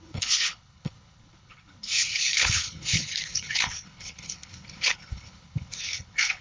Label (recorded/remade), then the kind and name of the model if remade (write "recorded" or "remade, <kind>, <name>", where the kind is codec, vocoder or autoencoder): remade, codec, HILCodec